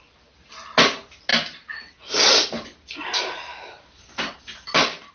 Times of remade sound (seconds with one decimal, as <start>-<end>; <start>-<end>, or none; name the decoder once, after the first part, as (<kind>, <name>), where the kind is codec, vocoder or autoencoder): none